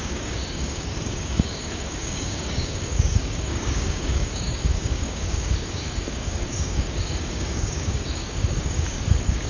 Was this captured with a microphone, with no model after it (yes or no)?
no